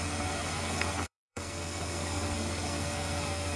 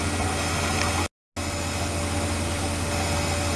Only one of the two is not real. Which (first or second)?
first